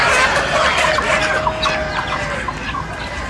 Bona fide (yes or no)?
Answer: yes